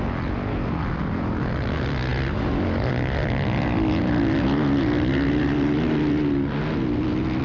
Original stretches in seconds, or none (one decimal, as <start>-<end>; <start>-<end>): 0.0-7.4